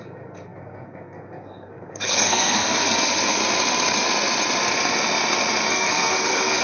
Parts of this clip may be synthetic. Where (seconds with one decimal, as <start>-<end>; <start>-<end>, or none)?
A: 0.0-3.4; 5.7-6.6